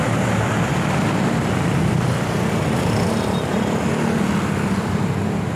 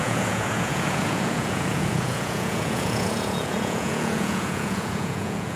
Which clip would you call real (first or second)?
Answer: first